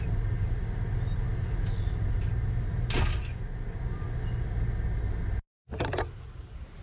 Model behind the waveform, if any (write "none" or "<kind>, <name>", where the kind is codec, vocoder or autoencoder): none